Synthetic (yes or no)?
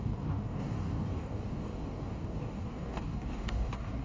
yes